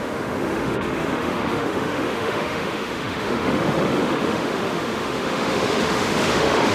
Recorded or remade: remade